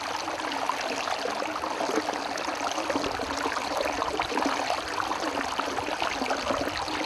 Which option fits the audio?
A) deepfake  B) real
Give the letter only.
B